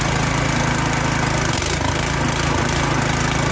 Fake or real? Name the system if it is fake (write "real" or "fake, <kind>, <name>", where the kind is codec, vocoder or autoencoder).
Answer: real